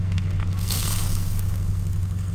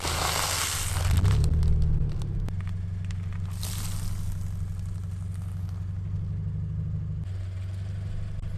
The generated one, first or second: first